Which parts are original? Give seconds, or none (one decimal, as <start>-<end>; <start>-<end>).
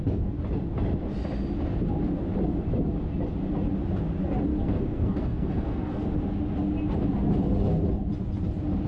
0.0-4.5; 6.0-8.9